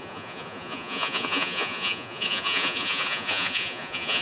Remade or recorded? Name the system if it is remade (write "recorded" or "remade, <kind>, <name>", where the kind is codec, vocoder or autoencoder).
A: remade, vocoder, Vocos